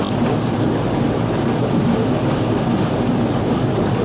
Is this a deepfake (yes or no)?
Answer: no